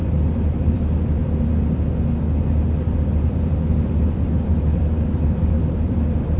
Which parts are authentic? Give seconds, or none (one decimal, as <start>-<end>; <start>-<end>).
1.2-2.6